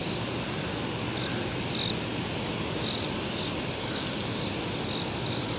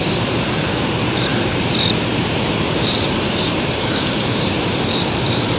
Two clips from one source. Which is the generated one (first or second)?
second